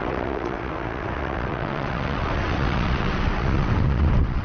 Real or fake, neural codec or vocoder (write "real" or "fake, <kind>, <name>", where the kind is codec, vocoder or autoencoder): fake, vocoder, WaveNeXt